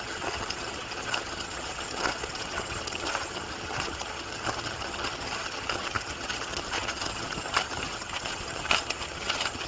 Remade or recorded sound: remade